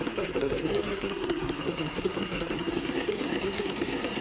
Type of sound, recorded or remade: remade